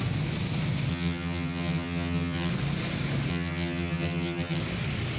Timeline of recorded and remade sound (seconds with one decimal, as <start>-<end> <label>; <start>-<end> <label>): 0.0-0.9 recorded; 0.9-2.5 remade; 2.5-3.3 recorded; 3.3-4.6 remade; 4.6-5.2 recorded